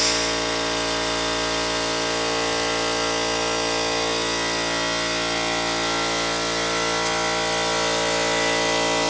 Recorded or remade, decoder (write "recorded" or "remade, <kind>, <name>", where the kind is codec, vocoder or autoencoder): recorded